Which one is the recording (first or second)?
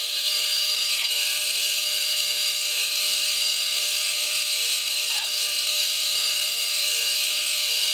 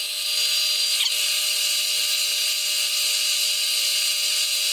second